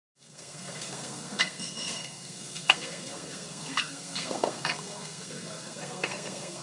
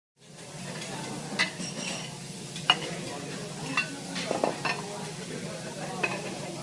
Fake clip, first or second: first